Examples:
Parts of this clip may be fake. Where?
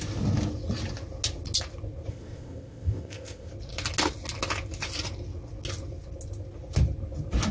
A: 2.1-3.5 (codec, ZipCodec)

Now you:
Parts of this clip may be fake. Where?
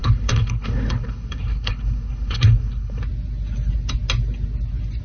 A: 0.0-3.0 (codec, HILCodec)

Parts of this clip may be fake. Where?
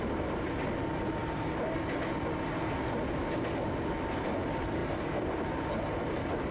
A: none